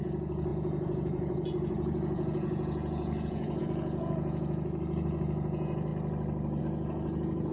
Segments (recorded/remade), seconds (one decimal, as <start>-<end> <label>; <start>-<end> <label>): 0.0-5.9 remade; 5.9-6.6 recorded; 6.6-7.5 remade